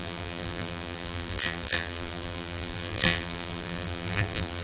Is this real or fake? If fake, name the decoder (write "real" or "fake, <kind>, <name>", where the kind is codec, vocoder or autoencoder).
fake, vocoder, BigVGAN v2